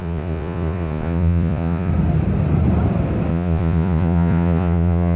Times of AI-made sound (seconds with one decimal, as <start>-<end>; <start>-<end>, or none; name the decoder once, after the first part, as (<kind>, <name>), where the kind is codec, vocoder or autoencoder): 0.0-1.9 (vocoder, Vocos); 3.3-5.2